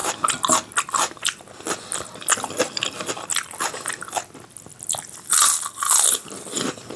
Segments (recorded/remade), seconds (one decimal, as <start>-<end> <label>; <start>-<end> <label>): 0.0-7.0 recorded

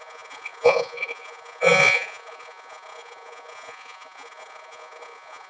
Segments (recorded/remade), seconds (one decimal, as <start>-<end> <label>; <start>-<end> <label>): 0.0-5.5 remade

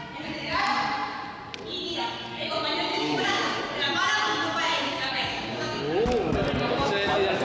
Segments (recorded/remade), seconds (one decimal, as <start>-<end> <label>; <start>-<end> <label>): 0.0-2.9 recorded; 2.9-3.6 remade; 3.6-4.7 recorded; 4.7-5.8 remade; 5.8-7.4 recorded

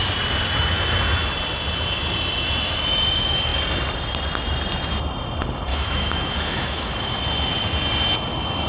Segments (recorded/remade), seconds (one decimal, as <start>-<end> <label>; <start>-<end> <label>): 0.0-5.7 recorded; 5.7-7.2 remade; 7.2-8.7 recorded

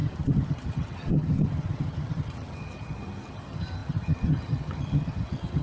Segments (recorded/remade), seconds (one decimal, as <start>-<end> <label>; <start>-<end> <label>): 0.0-5.6 remade